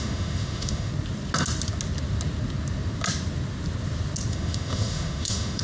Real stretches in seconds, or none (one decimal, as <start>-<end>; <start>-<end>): 0.9-4.3